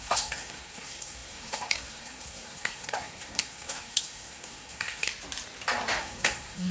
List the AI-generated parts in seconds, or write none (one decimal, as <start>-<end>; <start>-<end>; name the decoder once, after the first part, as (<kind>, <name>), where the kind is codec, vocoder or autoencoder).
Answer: 0.0-5.1 (codec, SNAC); 6.0-6.7